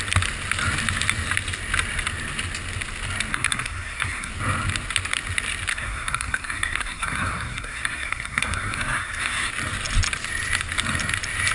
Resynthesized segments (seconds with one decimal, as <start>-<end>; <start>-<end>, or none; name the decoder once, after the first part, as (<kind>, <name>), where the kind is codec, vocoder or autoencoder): 3.3-4.3 (codec, SNAC); 5.7-9.5